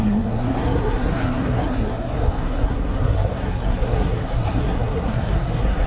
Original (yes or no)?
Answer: no